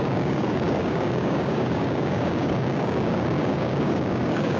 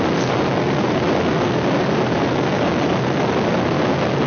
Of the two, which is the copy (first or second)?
first